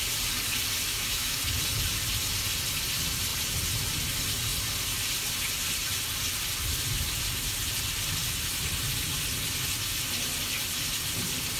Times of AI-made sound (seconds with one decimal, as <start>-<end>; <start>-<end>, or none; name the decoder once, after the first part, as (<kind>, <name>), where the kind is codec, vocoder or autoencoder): 0.9-1.4 (autoencoder, DAC-VAE)